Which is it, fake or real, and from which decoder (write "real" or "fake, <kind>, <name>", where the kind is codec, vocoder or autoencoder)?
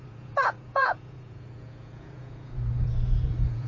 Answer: fake, vocoder, Vocos